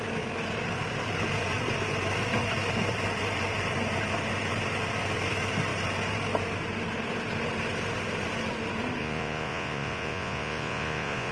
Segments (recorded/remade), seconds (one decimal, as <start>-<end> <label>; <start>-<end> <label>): 0.0-9.0 recorded; 9.0-11.3 remade